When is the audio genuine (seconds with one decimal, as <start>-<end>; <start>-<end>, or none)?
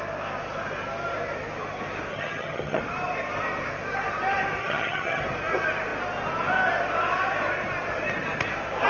0.0-2.1; 2.8-4.6; 5.2-8.9